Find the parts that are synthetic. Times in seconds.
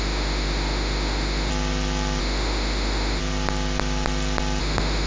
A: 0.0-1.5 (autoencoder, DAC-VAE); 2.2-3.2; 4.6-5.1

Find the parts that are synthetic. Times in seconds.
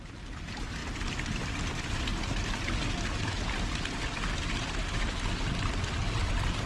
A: 0.0-0.8 (vocoder, BigVGAN v2); 1.4-2.1; 5.0-6.7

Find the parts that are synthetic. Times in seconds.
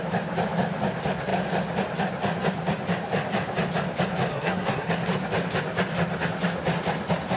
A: 4.3-4.9 (codec, SNAC)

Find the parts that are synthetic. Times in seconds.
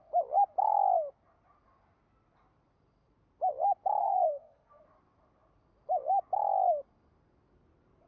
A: 4.0-4.8 (codec, SNAC)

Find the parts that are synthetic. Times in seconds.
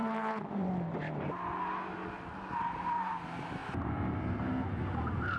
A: 0.0-1.6 (vocoder, BigVGAN v2); 3.6-4.5